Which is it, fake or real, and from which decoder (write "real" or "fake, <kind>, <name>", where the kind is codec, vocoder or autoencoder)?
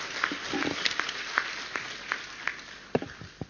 real